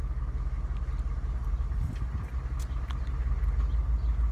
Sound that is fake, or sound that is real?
real